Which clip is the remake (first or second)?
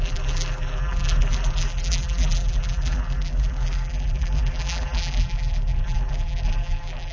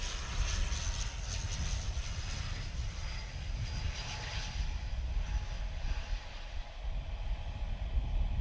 first